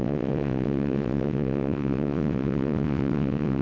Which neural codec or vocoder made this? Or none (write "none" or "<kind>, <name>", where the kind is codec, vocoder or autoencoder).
vocoder, WaveNeXt